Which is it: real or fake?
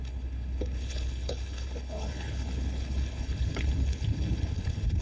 fake